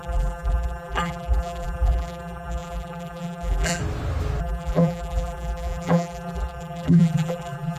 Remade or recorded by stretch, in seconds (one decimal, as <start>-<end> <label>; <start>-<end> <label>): 0.0-3.8 remade; 3.8-4.4 recorded; 4.4-7.8 remade